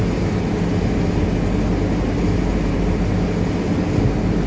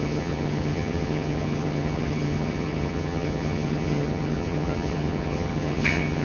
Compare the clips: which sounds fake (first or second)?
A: second